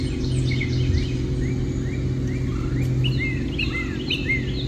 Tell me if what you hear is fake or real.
real